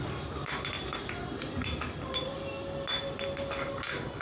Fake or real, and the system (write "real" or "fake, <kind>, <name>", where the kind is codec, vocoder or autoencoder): real